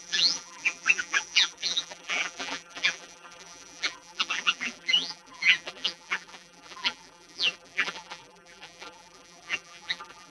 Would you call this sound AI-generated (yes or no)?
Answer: yes